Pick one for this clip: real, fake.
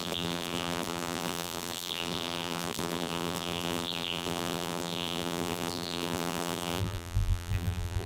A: fake